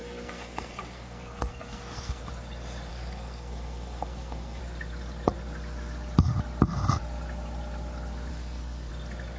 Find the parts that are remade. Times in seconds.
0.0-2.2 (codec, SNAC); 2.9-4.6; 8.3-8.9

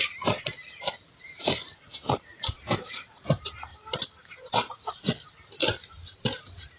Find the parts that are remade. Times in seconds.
0.0-1.9 (vocoder, BigVGAN v2); 2.7-5.6; 6.1-6.8

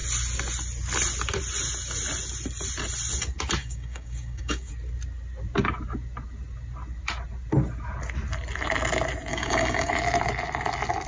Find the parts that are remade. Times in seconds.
3.6-4.7 (codec, DAC); 9.3-9.9

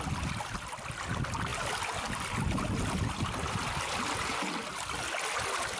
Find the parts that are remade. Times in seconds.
none